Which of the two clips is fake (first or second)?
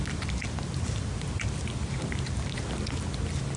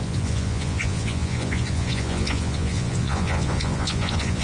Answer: second